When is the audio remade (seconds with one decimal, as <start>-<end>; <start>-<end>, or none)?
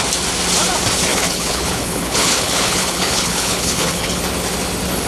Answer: 1.1-4.2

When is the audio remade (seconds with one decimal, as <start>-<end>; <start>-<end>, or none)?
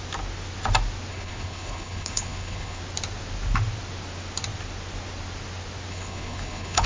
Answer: 1.1-2.8; 5.9-6.9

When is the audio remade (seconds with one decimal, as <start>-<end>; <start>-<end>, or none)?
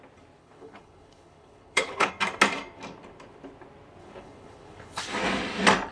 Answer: 0.4-2.1; 4.0-5.0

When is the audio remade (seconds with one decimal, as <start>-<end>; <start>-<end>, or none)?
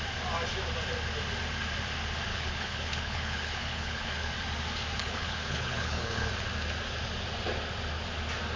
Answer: 2.3-4.3; 5.0-6.3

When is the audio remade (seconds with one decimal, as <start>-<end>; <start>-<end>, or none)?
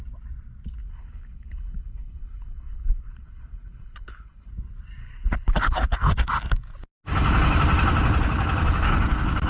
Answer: 0.8-4.5; 5.0-6.1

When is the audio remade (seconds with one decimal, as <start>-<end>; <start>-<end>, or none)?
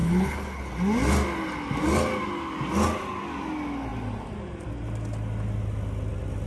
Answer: 0.0-0.7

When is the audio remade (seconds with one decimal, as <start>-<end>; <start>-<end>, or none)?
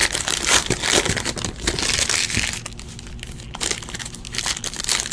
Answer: none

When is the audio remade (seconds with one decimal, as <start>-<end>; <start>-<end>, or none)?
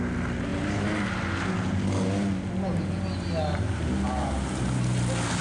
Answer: none